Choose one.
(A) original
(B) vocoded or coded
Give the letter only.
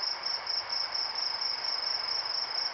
A